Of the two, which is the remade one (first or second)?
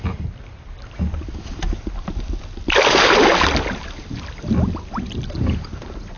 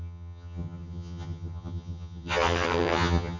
second